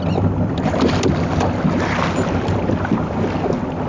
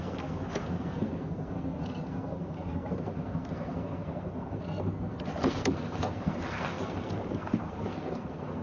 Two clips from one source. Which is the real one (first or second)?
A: first